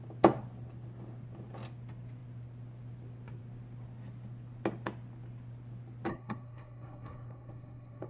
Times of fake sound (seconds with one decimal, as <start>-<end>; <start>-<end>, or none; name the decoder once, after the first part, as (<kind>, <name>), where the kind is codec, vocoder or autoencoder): 6.1-8.1 (codec, SNAC)